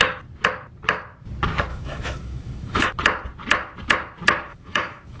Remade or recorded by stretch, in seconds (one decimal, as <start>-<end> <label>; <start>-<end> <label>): 0.0-1.7 recorded; 1.7-2.9 remade; 2.9-4.5 recorded; 4.5-5.2 remade